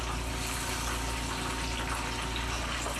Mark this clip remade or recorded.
recorded